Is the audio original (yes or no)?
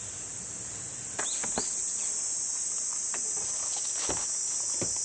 yes